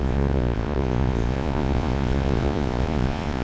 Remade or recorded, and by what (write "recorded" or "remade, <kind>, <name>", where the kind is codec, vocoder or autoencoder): remade, vocoder, Vocos